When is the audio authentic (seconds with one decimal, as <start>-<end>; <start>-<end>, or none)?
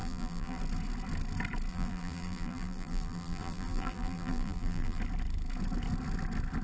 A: 0.6-1.7; 5.0-6.6